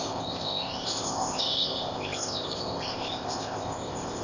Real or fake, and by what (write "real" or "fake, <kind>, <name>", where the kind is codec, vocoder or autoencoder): fake, codec, ZipCodec